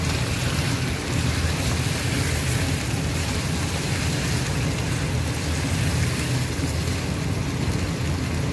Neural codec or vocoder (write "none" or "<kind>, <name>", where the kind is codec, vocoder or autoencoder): none